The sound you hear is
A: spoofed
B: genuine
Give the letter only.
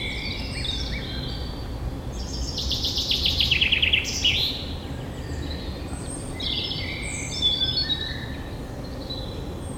A